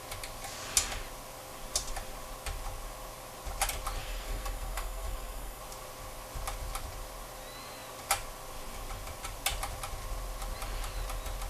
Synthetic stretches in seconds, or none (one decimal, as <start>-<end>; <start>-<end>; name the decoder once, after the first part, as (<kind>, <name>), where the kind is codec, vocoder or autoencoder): 4.0-5.6 (codec, SNAC)